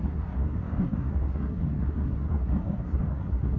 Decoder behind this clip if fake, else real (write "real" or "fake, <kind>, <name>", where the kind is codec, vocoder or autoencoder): fake, codec, SNAC